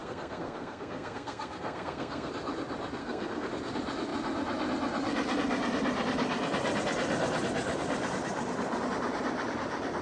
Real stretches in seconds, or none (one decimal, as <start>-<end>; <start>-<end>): 2.3-3.0; 3.5-10.0